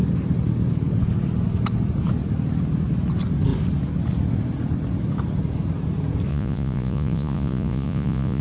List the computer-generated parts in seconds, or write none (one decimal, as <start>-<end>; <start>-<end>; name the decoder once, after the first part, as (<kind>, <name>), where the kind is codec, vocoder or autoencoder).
6.3-8.4 (vocoder, Vocos)